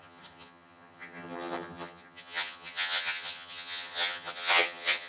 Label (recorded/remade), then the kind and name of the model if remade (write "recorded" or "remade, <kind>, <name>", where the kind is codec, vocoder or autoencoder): remade, vocoder, HiFi-GAN